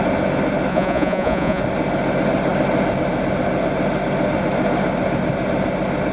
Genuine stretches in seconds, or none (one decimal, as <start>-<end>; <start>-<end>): 0.0-0.7; 1.6-6.1